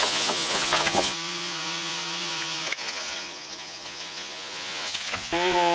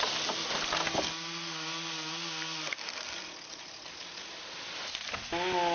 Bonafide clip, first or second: second